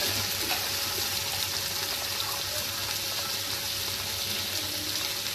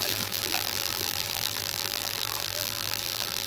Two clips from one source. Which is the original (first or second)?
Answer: first